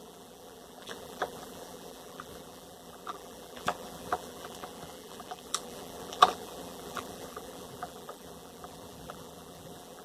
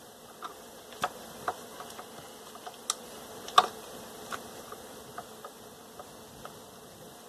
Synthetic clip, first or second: first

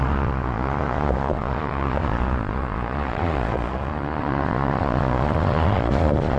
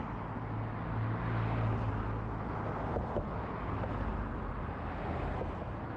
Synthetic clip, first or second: first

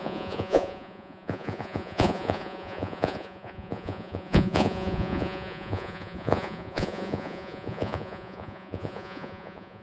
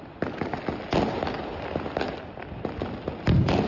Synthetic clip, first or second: first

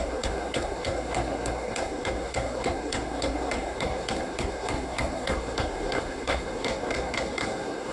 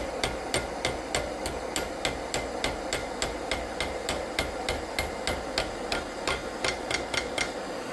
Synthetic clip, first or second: first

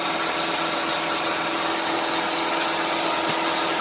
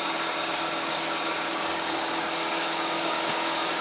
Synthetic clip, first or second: second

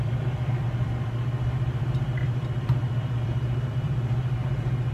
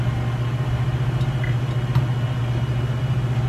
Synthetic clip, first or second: first